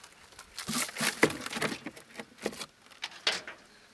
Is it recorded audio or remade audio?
recorded